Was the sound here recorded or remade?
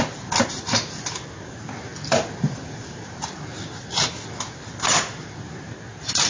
recorded